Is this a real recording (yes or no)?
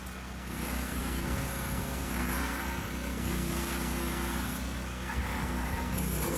no